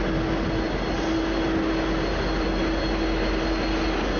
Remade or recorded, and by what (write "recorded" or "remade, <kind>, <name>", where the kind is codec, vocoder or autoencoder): recorded